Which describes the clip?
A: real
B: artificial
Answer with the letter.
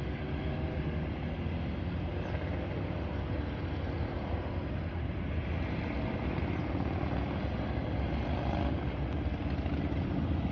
A